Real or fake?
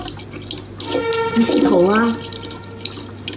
real